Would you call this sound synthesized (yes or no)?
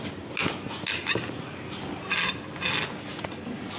no